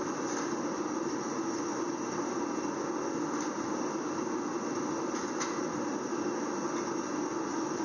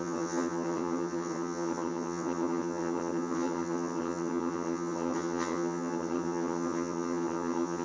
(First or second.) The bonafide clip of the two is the first